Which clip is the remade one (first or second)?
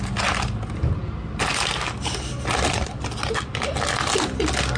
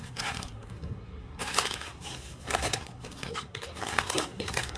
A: second